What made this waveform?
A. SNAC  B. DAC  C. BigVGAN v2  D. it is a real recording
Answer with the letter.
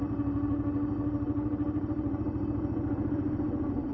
D